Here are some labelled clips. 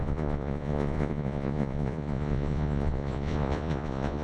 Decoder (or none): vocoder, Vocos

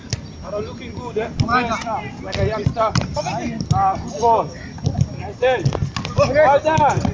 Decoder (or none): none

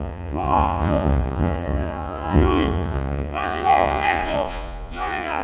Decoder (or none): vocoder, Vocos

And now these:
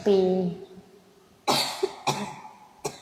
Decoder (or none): none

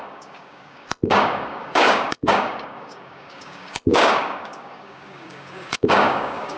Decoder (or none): codec, DAC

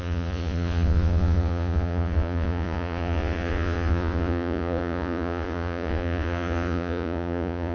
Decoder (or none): vocoder, Vocos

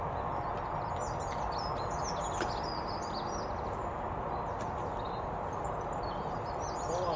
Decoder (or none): none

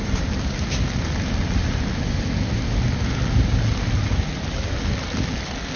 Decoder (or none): none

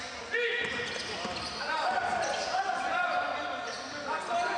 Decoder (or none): none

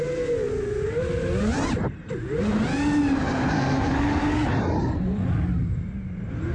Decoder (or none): none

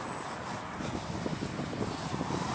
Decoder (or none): none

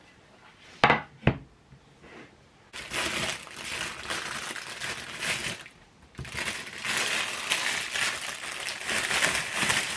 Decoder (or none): none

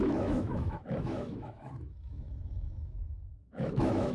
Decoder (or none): autoencoder, DAC-VAE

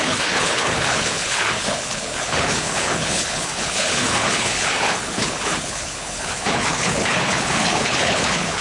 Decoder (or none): codec, HILCodec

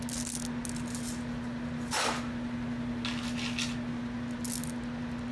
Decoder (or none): none